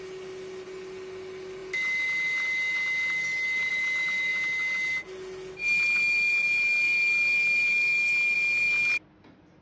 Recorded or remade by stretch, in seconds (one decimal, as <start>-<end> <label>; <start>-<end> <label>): 0.0-9.6 recorded